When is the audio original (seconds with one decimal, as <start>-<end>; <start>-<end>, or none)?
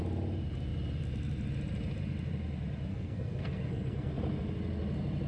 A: 0.0-2.9; 4.1-5.3